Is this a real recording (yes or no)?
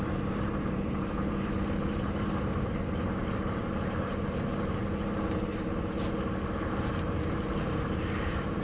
no